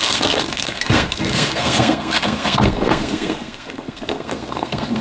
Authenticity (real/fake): fake